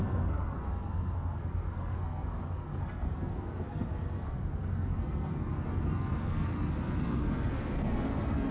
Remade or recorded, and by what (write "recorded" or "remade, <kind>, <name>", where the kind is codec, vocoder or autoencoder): remade, codec, SNAC